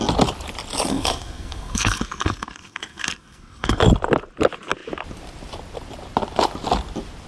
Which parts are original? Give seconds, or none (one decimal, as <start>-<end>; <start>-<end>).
0.0-0.9; 3.8-7.3